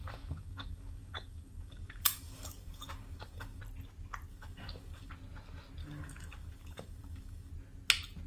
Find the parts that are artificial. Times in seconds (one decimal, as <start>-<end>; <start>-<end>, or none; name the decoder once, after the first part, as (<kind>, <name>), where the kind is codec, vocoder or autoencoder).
0.0-3.6 (codec, DAC); 4.3-5.1; 5.8-7.5

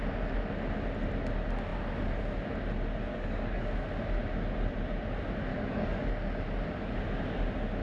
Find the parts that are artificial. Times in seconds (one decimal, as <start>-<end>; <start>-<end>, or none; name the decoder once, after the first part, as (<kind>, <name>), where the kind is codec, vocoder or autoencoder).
3.1-3.7 (codec, DAC); 5.5-6.1

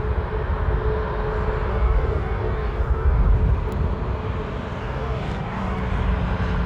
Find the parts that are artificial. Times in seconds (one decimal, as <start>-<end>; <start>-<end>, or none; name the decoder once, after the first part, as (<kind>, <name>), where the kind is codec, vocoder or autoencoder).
1.7-3.3 (codec, DAC); 4.8-5.8

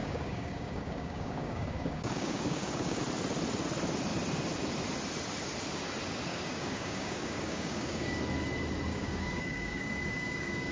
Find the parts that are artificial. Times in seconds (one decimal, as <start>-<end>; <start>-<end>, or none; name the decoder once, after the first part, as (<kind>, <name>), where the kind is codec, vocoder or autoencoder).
0.0-3.0 (codec, DAC); 6.3-8.2; 8.9-10.7

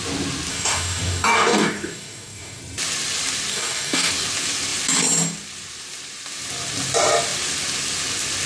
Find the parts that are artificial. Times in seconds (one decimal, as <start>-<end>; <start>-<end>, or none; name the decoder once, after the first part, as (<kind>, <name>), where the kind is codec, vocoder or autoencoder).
0.5-2.6 (codec, DAC); 3.5-4.1

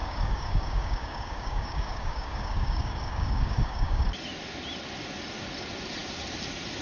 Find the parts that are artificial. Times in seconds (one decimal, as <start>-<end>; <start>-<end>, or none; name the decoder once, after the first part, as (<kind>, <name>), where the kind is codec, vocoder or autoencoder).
0.0-4.1 (codec, DAC)